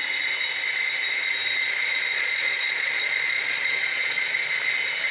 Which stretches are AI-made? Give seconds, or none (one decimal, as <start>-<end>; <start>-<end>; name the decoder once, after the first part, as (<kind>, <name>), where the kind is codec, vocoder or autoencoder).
2.1-4.4 (vocoder, Vocos)